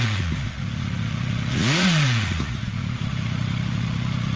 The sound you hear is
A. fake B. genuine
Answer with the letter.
A